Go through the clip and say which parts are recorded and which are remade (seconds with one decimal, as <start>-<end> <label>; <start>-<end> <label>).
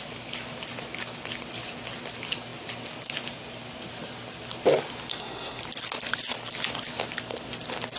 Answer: 0.0-5.1 recorded; 5.1-5.6 remade; 5.6-8.0 recorded